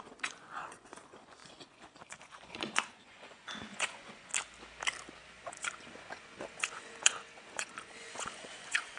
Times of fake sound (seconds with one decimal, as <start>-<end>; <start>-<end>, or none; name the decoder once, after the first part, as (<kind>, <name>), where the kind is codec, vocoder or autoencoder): 0.0-4.3 (vocoder, Vocos); 5.3-9.0